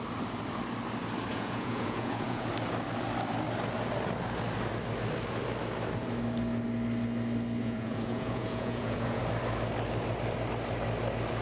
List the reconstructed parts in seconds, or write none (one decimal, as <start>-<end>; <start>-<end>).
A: 1.3-2.5; 7.6-9.2